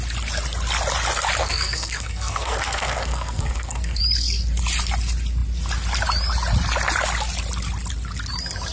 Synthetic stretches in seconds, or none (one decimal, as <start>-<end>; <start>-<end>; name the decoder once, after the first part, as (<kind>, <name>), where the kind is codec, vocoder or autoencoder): 1.4-4.0 (codec, SNAC)